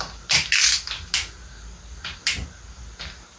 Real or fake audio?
real